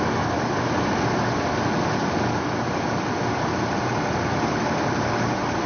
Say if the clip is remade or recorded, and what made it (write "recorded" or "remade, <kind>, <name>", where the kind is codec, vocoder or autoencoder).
recorded